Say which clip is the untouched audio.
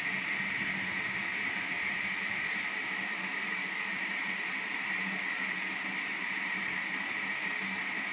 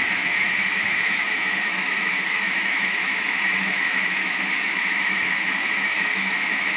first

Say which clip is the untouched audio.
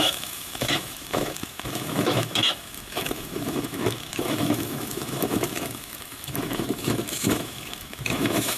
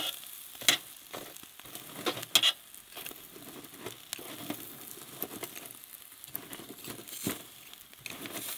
second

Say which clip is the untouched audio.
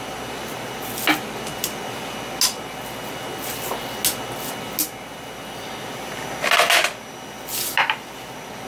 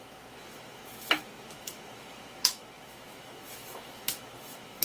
first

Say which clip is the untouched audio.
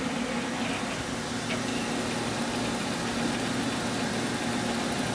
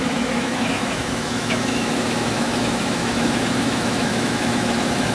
first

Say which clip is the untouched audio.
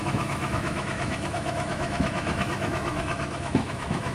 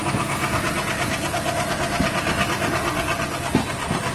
second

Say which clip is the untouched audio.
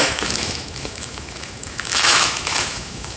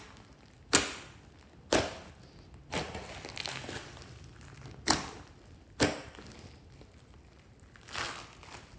second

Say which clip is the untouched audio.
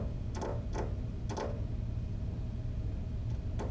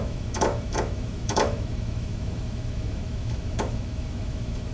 first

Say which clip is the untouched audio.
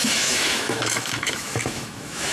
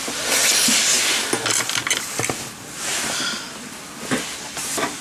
second